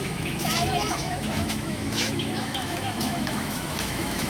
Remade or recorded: remade